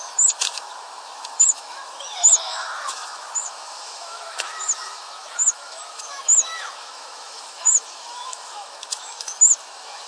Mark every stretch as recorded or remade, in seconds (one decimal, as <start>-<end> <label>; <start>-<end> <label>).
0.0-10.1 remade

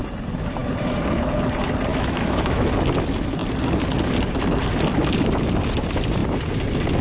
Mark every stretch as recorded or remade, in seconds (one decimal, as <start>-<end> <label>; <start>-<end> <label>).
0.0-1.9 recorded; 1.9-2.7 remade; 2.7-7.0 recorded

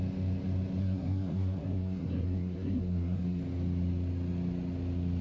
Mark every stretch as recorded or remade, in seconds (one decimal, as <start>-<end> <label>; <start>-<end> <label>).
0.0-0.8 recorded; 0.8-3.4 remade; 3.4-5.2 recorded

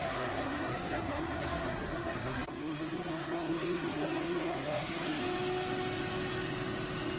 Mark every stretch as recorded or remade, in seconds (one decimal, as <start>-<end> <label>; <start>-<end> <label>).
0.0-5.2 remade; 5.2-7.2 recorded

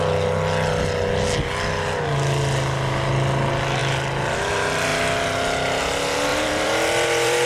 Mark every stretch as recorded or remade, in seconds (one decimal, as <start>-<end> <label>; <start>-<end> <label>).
0.0-6.3 recorded; 6.3-7.5 remade

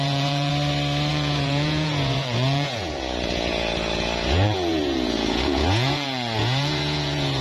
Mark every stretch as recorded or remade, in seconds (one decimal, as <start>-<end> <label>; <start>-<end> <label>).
0.0-0.5 remade; 0.5-1.1 recorded; 1.1-7.4 remade

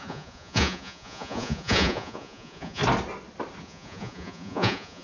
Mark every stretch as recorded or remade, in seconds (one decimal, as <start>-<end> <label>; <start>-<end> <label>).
0.0-2.8 remade; 2.8-3.6 recorded; 3.6-5.0 remade

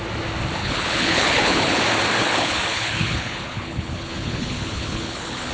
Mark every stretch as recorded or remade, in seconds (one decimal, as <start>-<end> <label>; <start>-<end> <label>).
0.0-0.6 recorded; 0.6-1.8 remade; 1.8-2.2 recorded; 2.2-5.5 remade